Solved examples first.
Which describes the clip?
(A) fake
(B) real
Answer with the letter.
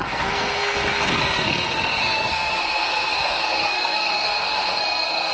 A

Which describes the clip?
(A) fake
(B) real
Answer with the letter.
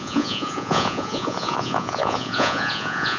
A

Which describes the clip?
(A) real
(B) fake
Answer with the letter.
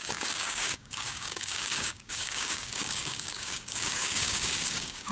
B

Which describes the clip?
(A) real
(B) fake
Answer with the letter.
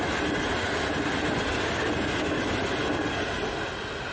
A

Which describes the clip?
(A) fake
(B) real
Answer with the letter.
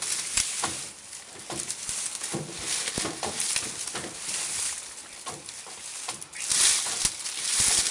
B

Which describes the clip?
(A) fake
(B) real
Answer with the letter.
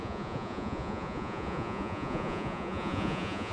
A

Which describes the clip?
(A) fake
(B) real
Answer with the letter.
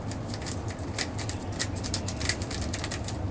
B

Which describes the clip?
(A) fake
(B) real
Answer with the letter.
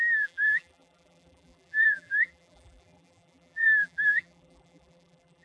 A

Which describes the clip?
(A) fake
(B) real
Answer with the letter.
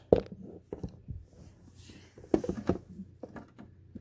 B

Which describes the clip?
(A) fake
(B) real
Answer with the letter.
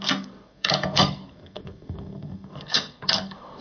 A